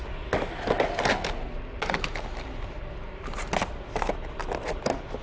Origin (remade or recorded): recorded